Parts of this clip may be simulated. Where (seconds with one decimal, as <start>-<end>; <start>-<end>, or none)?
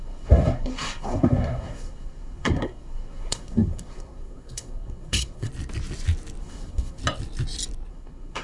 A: 0.0-5.5; 6.4-7.0; 7.9-8.4